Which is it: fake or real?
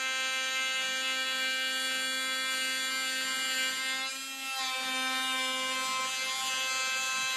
real